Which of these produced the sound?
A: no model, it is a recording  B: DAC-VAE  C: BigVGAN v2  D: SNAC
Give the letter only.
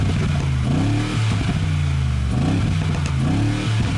A